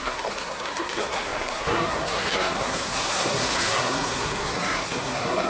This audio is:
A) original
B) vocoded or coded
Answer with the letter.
B